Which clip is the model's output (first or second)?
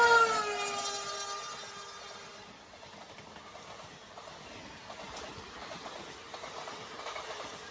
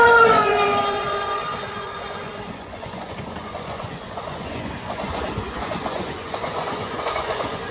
second